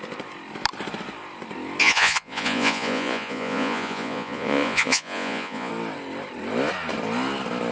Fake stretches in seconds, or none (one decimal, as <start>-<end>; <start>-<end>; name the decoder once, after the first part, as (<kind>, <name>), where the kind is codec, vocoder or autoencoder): 1.8-5.7 (vocoder, Vocos)